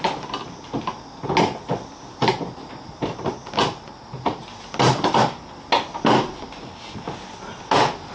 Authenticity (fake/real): real